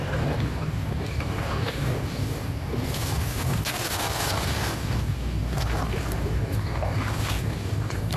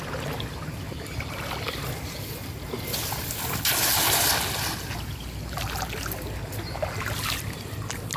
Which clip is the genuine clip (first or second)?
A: second